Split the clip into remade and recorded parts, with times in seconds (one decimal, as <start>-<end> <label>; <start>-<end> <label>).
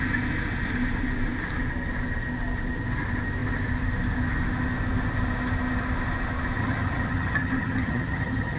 0.0-6.6 recorded; 6.6-8.6 remade